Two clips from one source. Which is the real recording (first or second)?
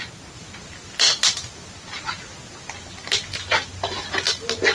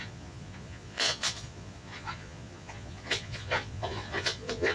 first